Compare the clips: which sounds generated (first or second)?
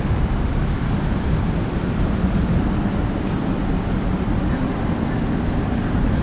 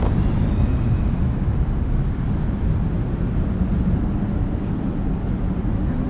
first